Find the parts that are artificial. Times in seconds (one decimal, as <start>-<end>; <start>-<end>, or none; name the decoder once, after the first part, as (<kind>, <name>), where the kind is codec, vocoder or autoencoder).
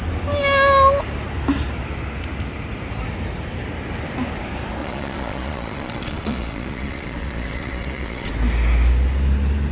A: 4.8-8.3 (vocoder, Vocos)